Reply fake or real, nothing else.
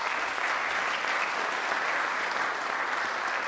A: real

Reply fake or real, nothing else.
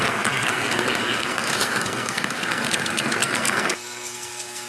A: fake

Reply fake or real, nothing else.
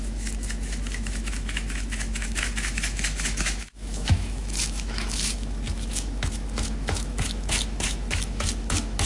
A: fake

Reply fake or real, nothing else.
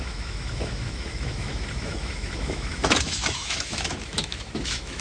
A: fake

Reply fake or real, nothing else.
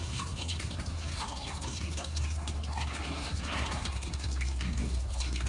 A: fake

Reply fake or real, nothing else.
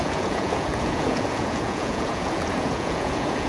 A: fake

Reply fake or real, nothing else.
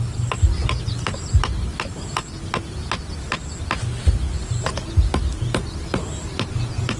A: real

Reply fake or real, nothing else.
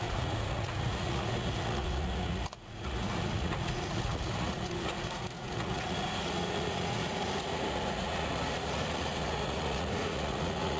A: fake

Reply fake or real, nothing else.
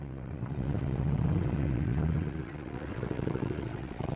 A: fake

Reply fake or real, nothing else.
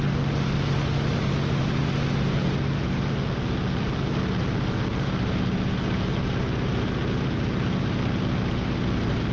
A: real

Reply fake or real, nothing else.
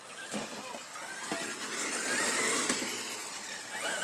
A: real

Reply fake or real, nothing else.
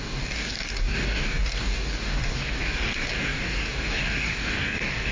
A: fake